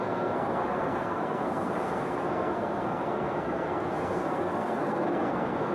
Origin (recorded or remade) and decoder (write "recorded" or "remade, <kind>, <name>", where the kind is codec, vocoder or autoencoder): remade, codec, SNAC